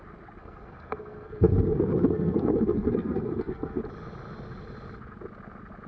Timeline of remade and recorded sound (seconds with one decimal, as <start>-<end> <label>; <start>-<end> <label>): 0.0-0.4 recorded; 0.4-3.8 remade; 3.8-5.9 recorded